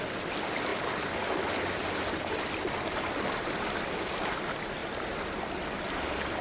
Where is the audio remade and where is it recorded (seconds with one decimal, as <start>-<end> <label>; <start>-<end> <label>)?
0.0-6.4 recorded